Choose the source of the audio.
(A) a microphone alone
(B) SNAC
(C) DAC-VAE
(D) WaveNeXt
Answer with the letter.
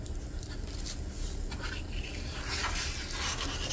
A